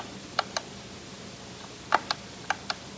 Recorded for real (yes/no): yes